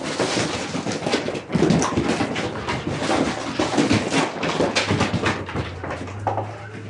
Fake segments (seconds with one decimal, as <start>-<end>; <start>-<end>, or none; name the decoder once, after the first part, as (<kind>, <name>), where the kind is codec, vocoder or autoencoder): none